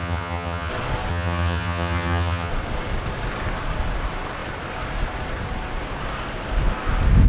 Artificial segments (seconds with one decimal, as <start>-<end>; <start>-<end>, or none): 0.0-0.7; 1.1-2.5